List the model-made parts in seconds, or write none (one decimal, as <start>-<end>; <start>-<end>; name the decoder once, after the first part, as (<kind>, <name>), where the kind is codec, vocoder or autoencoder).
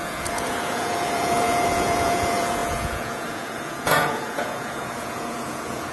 0.0-5.9 (vocoder, Vocos)